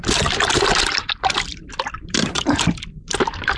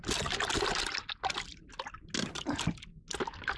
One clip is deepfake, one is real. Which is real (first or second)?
second